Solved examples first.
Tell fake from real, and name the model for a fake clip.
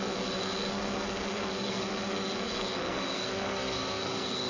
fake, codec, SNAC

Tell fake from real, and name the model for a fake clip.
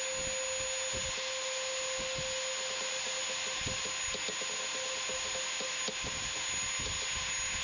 real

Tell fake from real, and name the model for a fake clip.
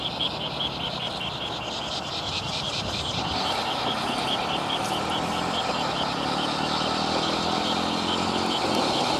real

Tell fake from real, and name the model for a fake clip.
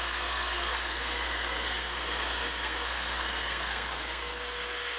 fake, codec, SNAC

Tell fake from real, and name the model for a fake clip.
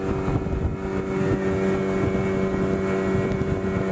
real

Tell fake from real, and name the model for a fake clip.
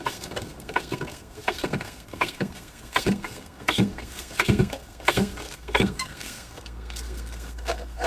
fake, codec, SNAC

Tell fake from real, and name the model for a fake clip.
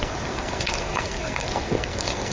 fake, codec, SNAC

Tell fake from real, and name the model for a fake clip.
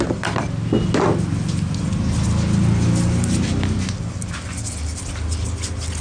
real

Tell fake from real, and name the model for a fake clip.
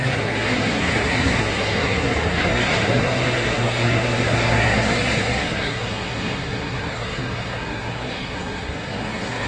fake, codec, SNAC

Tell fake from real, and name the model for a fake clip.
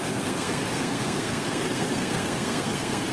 fake, codec, SNAC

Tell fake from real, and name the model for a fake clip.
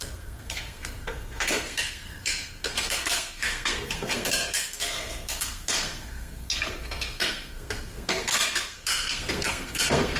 fake, codec, SNAC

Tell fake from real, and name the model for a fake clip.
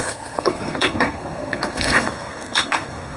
fake, codec, SNAC